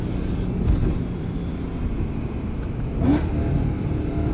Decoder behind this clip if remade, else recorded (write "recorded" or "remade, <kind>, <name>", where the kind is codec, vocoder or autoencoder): remade, vocoder, BigVGAN v2